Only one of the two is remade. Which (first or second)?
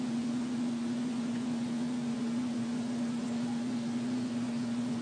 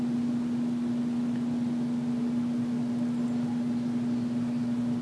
first